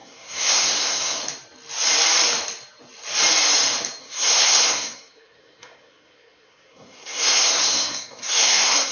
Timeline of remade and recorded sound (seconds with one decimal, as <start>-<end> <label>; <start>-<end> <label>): 0.0-1.2 remade; 1.2-4.0 recorded; 4.0-8.9 remade